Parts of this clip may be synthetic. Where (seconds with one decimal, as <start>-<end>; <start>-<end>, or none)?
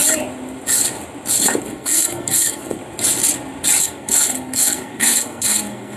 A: 1.6-2.8; 3.8-6.0